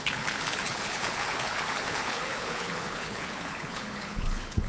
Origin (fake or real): fake